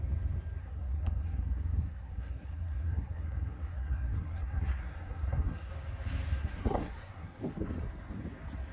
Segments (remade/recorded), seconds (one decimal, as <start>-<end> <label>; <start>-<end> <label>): 0.0-0.6 recorded; 0.6-5.7 remade; 5.7-6.4 recorded; 6.4-7.4 remade; 7.4-8.7 recorded